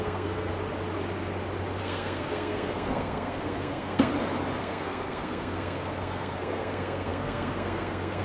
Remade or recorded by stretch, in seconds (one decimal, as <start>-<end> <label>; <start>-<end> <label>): 0.0-0.5 remade; 0.5-1.8 recorded; 1.8-4.1 remade; 4.1-4.6 recorded; 4.6-8.2 remade